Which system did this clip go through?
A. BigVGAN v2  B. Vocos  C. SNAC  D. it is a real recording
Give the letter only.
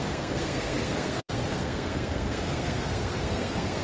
C